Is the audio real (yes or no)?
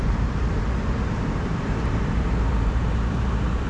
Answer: no